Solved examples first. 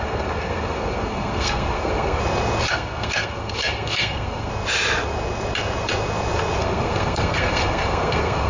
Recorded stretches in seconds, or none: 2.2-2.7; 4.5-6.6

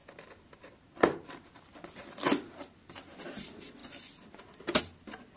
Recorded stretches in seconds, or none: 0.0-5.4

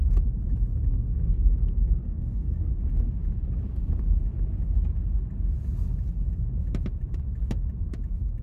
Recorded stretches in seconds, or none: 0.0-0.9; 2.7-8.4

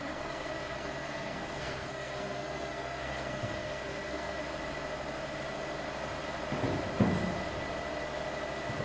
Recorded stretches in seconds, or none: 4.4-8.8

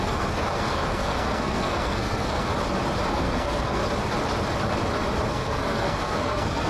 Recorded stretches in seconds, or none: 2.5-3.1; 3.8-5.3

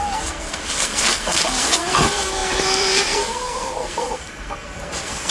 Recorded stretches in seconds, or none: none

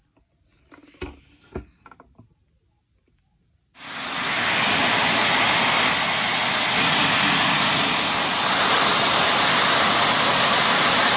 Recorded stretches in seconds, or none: 0.0-11.2

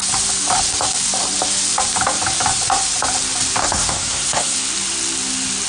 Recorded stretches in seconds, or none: 0.0-3.6; 4.6-5.7